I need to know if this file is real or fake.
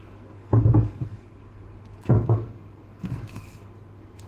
fake